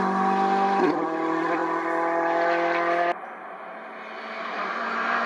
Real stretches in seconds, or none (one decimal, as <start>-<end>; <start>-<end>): 0.0-5.3